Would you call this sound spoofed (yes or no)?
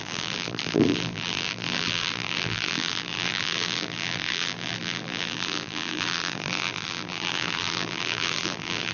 yes